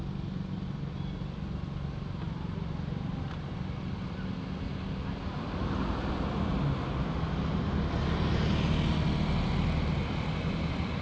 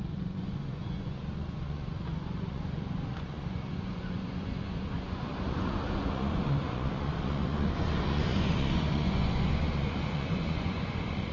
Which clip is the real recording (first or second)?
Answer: first